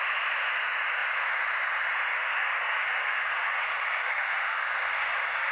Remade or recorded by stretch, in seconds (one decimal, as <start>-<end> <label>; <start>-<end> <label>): 0.0-2.1 recorded; 2.1-5.5 remade